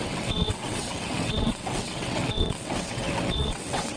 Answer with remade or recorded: remade